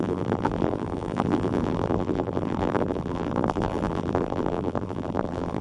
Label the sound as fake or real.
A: fake